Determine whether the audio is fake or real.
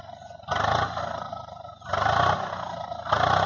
real